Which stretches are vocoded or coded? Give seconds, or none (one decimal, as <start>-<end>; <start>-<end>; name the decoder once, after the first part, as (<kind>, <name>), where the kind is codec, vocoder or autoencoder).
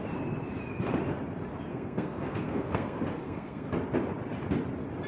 1.7-3.7 (codec, SNAC)